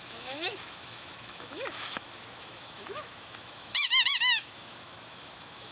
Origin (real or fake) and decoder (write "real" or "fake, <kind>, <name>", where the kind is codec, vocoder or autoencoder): fake, autoencoder, DAC-VAE